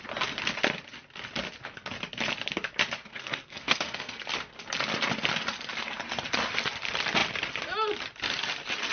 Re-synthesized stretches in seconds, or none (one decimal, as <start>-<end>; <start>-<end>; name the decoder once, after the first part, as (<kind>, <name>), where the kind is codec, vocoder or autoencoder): 3.1-4.2 (codec, SNAC)